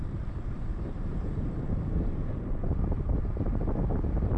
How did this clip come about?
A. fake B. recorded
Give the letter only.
A